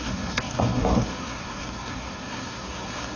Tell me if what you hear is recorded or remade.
remade